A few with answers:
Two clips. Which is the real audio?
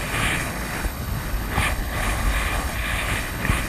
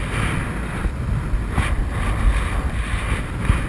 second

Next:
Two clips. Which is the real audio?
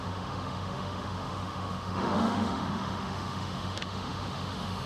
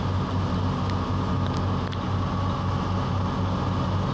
second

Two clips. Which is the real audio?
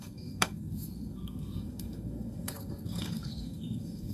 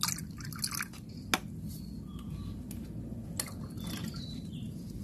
second